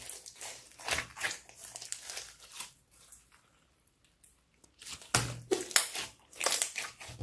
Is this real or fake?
real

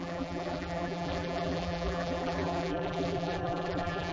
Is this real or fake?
fake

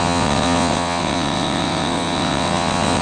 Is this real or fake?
fake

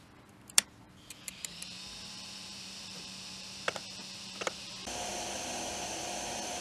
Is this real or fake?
fake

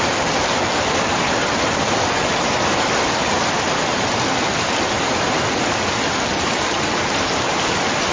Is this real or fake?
real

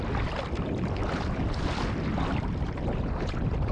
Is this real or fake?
real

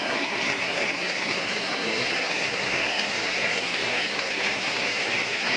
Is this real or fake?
fake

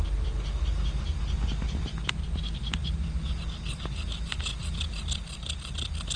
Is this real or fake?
real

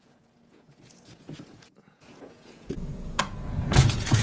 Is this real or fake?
fake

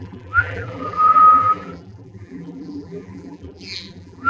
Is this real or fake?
fake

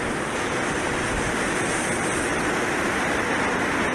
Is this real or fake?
real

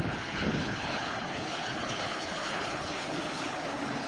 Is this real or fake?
fake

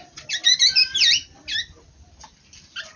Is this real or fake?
fake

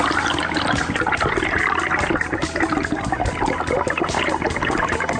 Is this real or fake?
real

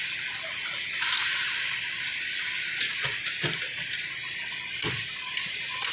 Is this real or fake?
real